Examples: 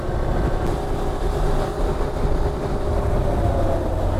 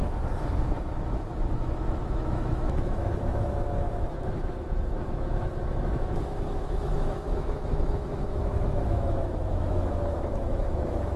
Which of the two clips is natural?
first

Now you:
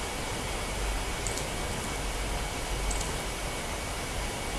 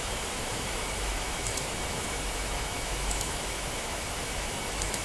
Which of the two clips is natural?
first